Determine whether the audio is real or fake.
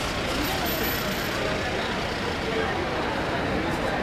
real